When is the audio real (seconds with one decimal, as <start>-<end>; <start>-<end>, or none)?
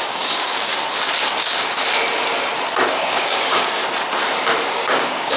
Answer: 0.7-1.4; 1.8-2.9; 3.8-4.7